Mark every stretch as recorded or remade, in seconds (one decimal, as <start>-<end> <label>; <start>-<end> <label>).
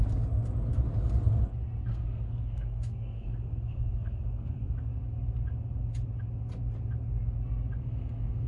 0.0-1.9 recorded; 1.9-4.9 remade; 4.9-7.8 recorded; 7.8-8.5 remade